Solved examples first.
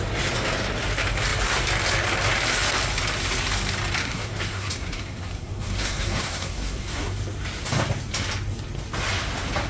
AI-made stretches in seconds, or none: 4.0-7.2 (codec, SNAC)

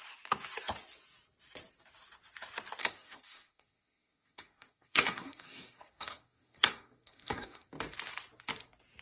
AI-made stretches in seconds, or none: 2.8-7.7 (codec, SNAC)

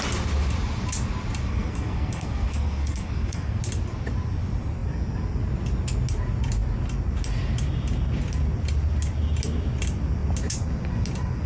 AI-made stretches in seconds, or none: 1.5-3.6 (codec, SNAC)

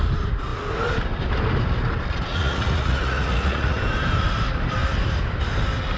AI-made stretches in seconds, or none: 2.3-3.8 (vocoder, Vocos)

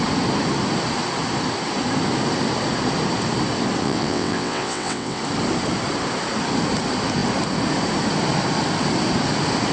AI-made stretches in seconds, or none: 3.8-5.2 (vocoder, WaveNeXt)

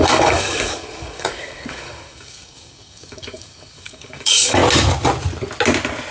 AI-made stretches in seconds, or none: 0.0-4.6 (codec, DAC)

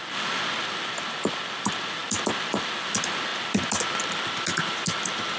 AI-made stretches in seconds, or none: none

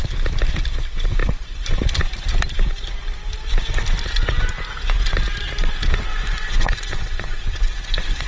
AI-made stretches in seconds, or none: 6.1-8.3 (vocoder, Vocos)